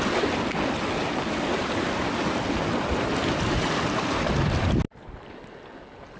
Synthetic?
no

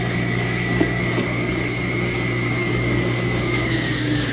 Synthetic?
yes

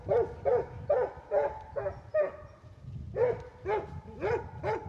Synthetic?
no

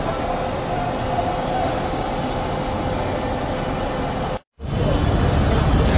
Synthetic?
no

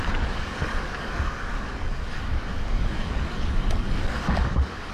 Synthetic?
yes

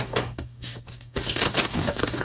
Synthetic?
yes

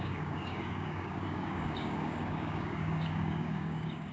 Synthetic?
yes